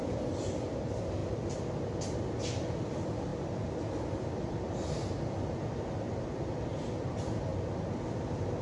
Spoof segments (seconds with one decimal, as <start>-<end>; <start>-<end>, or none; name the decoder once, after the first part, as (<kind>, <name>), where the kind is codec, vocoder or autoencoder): none